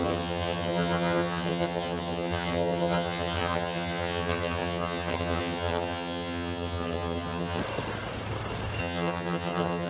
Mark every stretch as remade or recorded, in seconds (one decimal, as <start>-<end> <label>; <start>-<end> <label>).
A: 0.0-7.6 remade; 7.6-8.8 recorded; 8.8-9.9 remade